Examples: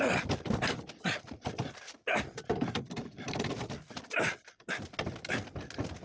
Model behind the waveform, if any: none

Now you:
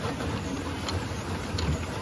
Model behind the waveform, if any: none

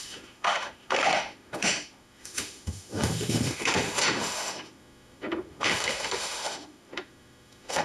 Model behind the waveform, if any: autoencoder, DAC-VAE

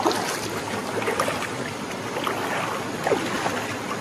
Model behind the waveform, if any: none